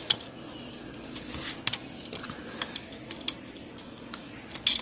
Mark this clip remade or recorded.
recorded